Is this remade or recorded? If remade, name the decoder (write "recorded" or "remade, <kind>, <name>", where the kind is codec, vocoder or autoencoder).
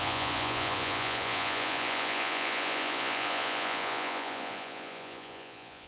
remade, vocoder, Vocos